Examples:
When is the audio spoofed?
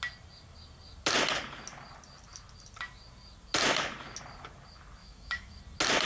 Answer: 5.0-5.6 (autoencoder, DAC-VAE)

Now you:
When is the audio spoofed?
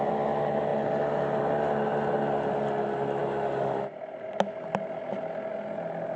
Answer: none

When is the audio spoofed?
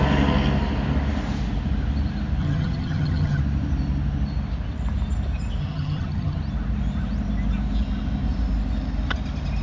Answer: 2.4-3.4 (vocoder, HiFi-GAN); 5.6-6.4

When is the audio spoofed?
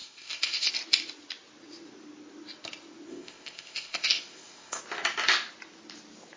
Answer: 0.0-0.7 (codec, ZipCodec); 3.1-4.8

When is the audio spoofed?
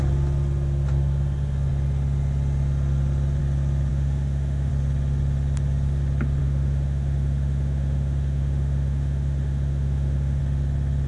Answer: 3.9-4.7 (autoencoder, DAC-VAE); 6.4-10.4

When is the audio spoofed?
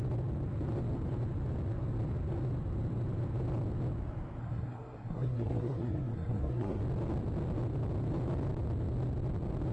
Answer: 4.4-6.8 (codec, SNAC)